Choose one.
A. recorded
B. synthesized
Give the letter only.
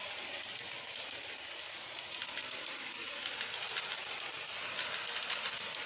A